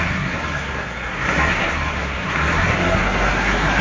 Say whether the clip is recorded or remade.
remade